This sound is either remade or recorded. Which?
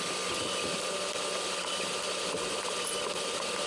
recorded